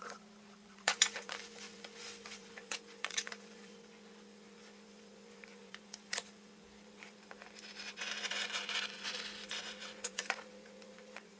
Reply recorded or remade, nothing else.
remade